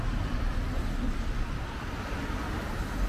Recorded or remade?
recorded